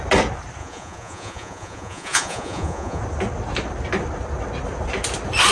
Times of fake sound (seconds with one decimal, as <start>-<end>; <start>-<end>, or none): 0.6-3.0